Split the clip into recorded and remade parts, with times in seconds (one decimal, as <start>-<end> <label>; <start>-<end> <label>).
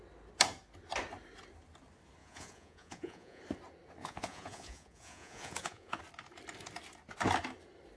0.0-2.2 recorded; 2.2-3.4 remade; 3.4-4.0 recorded; 4.0-6.0 remade; 6.0-8.0 recorded